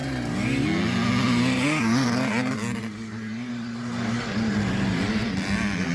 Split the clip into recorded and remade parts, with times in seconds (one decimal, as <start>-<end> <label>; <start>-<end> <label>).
0.0-5.9 recorded